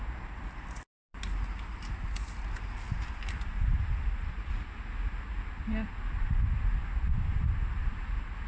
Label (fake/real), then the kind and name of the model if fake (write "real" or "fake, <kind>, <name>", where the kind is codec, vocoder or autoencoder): real